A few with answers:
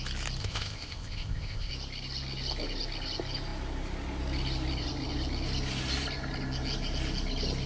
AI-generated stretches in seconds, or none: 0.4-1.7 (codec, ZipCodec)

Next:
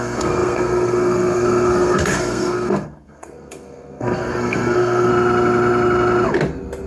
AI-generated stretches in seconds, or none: 0.0-5.1 (codec, SNAC)

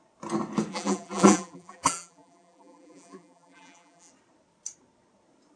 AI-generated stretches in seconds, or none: 0.7-4.1 (vocoder, BigVGAN v2)

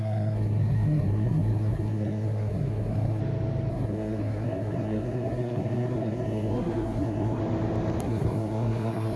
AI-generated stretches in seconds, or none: 0.0-3.2 (codec, SNAC); 3.7-7.4; 8.0-9.2

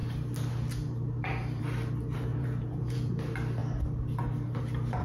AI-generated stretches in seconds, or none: 2.3-3.1 (vocoder, Vocos)

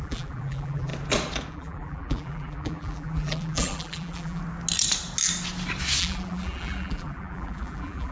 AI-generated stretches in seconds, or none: 0.0-0.9 (vocoder, BigVGAN v2); 1.5-4.4; 6.0-8.1